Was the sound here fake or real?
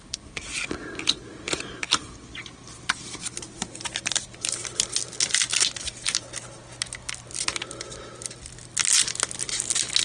real